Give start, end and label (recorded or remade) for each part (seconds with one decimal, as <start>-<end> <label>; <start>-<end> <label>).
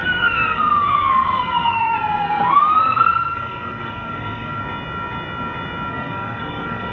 0.0-4.6 remade; 4.6-5.9 recorded; 5.9-6.9 remade